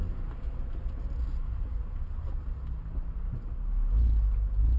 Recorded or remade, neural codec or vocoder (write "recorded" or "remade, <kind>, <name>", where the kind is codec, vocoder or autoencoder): recorded